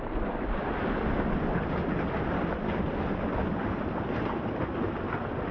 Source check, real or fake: real